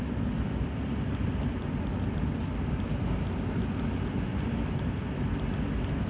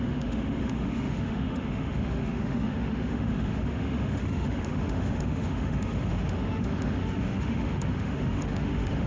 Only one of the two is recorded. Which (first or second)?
first